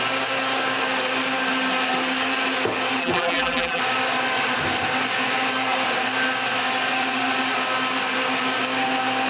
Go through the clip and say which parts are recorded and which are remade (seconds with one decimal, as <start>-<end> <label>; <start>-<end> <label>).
0.0-3.0 recorded; 3.0-3.8 remade; 3.8-9.3 recorded